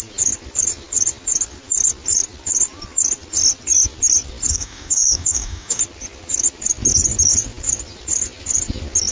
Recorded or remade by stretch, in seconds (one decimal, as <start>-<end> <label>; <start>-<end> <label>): 0.0-4.5 recorded; 4.5-5.8 remade; 5.8-9.1 recorded